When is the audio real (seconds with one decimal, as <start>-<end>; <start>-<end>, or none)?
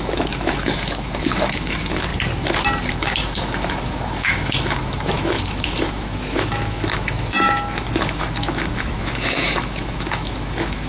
2.1-2.9